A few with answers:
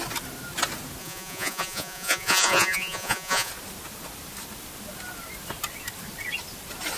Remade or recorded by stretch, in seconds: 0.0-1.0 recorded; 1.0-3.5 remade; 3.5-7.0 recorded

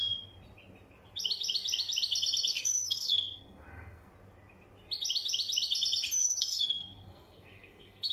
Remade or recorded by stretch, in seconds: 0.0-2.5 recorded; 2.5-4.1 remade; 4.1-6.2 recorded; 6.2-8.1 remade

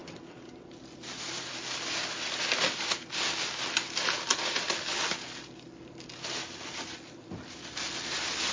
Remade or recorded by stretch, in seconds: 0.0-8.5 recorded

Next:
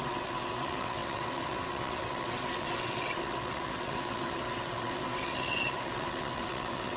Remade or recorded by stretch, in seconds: 0.0-7.0 remade